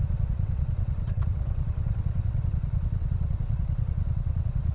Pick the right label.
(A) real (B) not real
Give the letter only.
B